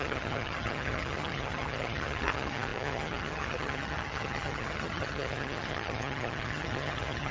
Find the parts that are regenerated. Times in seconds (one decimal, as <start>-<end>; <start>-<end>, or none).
0.0-7.3